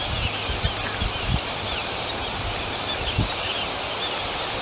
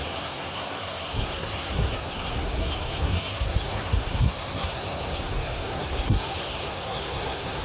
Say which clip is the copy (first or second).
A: second